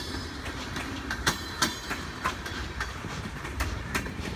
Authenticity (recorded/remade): remade